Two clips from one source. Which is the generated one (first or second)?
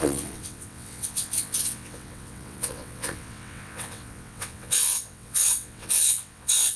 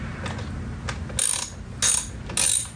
first